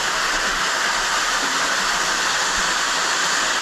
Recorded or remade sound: recorded